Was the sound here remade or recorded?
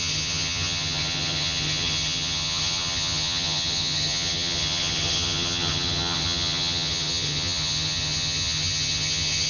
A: remade